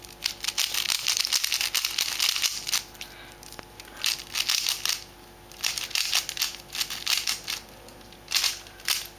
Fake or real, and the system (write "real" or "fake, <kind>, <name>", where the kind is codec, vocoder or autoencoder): real